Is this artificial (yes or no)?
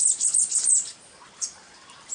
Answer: no